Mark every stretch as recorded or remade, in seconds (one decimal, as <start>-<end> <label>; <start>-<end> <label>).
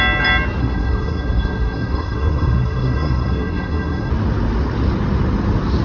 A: 0.0-0.6 recorded; 0.6-4.1 remade; 4.1-5.8 recorded